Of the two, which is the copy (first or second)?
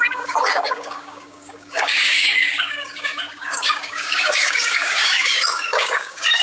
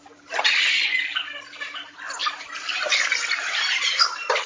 first